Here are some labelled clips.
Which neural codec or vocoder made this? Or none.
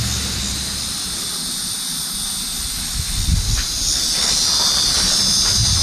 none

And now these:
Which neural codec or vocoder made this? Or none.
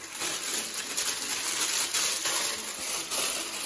none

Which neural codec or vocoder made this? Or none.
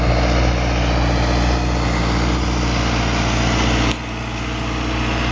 none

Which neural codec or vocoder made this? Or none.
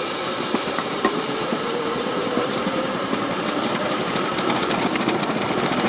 vocoder, BigVGAN v2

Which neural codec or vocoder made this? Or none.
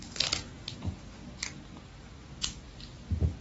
none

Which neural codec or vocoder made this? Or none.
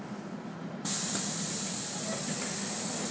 none